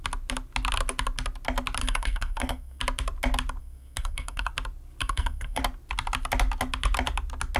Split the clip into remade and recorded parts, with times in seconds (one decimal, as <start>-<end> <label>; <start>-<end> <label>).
0.0-1.8 recorded; 1.8-2.8 remade; 2.8-3.6 recorded; 3.6-4.5 remade; 4.5-5.0 recorded; 5.0-5.6 remade; 5.6-7.6 recorded